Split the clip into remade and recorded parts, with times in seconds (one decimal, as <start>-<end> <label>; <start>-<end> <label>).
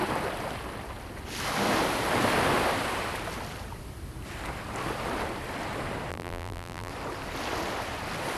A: 0.0-6.1 recorded; 6.1-6.9 remade; 6.9-8.4 recorded